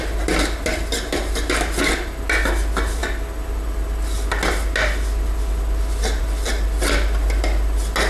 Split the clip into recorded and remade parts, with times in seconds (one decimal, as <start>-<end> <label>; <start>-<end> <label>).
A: 0.0-8.1 recorded